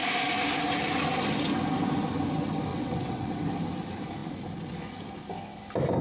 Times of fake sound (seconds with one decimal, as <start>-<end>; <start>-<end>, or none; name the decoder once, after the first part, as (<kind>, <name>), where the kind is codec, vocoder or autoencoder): 2.7-3.4 (vocoder, WaveNeXt)